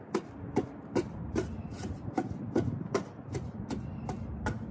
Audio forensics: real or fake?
real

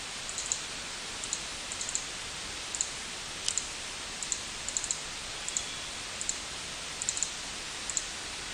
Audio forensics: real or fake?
real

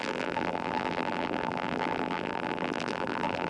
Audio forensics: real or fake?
fake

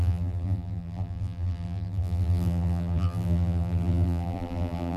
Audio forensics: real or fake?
fake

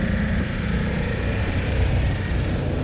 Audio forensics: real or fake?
fake